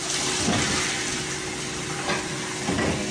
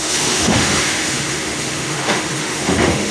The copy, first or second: second